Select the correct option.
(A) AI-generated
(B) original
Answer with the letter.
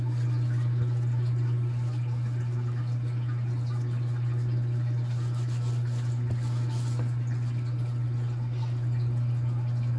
B